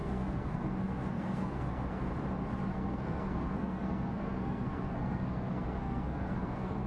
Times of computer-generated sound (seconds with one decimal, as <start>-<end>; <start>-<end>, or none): 0.0-2.1; 2.7-6.9